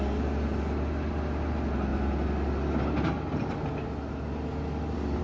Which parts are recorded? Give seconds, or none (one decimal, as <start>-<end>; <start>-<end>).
0.0-5.2